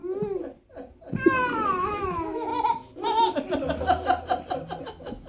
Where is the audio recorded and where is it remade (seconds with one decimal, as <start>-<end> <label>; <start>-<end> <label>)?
0.0-1.8 recorded; 1.8-2.5 remade; 2.5-4.8 recorded; 4.8-5.3 remade

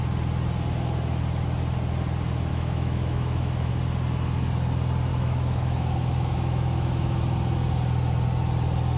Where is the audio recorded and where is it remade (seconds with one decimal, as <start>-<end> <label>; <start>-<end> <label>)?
0.0-2.5 recorded; 2.5-3.7 remade; 3.7-5.1 recorded; 5.1-7.2 remade; 7.2-9.0 recorded

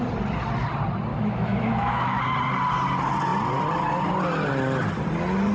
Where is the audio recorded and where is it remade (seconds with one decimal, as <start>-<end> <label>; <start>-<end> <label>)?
0.0-1.1 recorded; 1.1-2.2 remade; 2.2-5.5 recorded

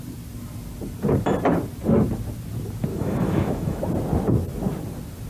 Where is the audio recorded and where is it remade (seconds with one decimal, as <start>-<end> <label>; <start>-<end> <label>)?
0.0-2.9 recorded; 2.9-3.8 remade; 3.8-5.3 recorded

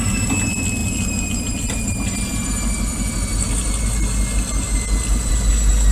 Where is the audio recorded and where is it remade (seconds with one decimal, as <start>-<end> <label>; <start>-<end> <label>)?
0.0-5.9 recorded